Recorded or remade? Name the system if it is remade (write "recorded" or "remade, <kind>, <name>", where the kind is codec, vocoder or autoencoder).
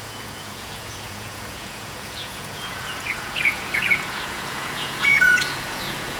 remade, vocoder, Vocos